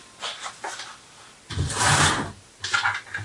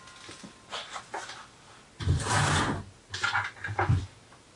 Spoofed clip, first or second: first